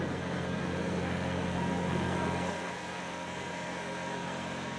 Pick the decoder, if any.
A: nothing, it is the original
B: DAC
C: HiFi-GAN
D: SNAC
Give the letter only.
D